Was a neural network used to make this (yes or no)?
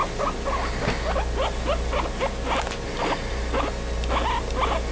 no